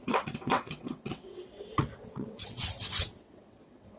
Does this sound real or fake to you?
fake